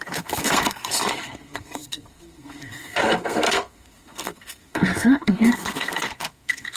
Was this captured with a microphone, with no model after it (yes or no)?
no